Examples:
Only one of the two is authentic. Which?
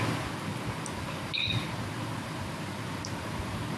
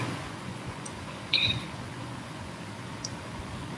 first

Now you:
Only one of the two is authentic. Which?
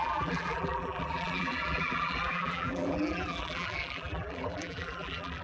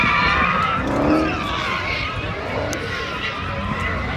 second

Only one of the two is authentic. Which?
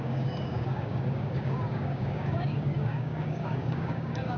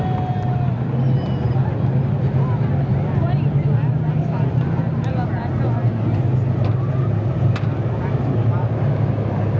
second